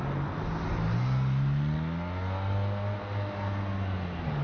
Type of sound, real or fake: real